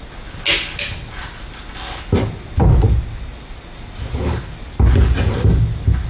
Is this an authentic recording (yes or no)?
yes